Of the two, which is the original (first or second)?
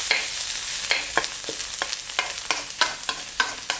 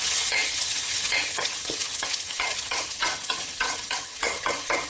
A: first